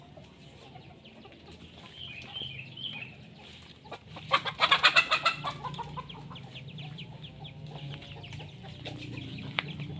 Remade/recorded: recorded